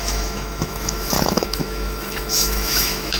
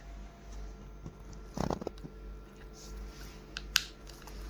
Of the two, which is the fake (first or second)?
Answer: first